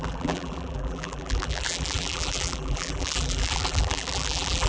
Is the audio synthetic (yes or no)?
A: yes